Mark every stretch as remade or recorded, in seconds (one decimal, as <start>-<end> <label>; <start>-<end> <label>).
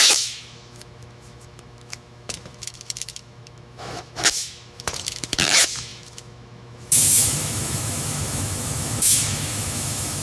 0.0-10.2 remade